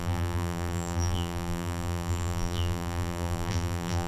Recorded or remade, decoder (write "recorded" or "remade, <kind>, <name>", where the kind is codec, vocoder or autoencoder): remade, vocoder, BigVGAN v2